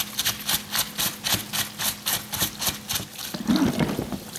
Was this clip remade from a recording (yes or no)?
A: no